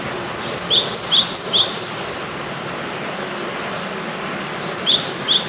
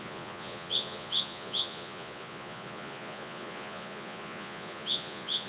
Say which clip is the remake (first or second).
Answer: second